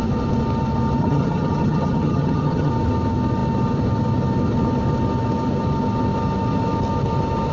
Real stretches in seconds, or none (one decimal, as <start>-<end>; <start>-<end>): 0.0-1.0; 2.7-7.5